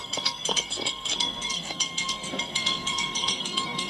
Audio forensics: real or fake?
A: fake